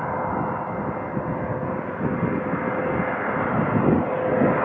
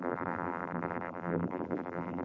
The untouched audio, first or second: first